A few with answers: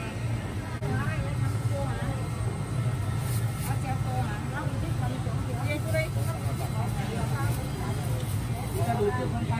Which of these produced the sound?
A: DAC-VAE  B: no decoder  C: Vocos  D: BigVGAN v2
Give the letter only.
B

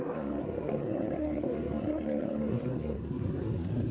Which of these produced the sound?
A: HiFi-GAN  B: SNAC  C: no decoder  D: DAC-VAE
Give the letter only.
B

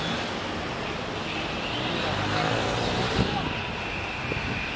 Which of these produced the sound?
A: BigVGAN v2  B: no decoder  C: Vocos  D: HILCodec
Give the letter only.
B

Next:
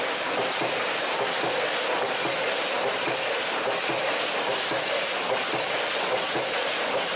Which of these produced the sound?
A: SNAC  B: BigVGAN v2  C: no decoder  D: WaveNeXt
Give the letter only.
B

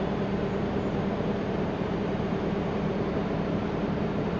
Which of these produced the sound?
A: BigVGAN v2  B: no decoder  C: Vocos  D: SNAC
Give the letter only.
A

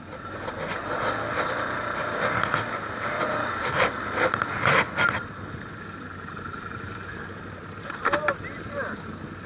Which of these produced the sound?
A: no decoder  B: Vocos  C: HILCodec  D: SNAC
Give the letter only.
A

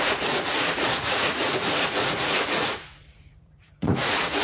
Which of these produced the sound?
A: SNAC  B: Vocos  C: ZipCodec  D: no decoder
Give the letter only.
B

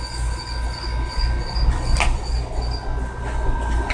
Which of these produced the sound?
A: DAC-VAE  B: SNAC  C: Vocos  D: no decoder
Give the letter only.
D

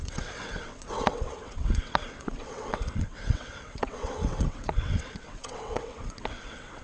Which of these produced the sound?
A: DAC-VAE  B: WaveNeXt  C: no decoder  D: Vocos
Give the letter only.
B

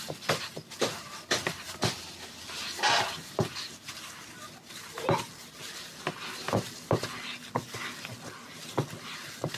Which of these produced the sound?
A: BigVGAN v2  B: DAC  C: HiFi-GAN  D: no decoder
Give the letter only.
D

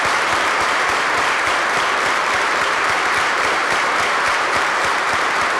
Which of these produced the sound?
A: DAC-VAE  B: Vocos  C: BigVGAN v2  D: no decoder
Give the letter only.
C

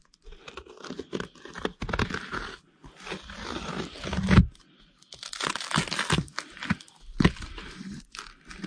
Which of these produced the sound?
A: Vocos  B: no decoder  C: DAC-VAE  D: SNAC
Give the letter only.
B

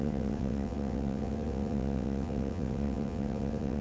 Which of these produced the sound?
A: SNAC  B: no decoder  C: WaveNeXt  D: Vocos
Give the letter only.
C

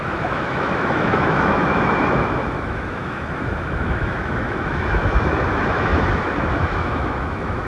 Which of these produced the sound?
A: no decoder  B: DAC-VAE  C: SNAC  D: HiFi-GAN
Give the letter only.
B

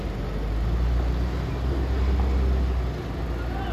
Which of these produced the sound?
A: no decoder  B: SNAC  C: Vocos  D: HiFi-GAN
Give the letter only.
A